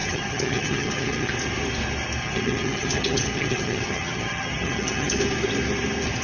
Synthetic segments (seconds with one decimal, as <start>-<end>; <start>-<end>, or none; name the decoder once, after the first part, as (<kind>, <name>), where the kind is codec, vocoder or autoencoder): 0.0-1.3 (vocoder, HiFi-GAN); 2.2-5.2